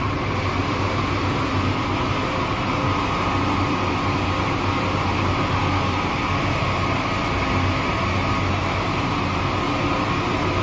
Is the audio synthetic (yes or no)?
no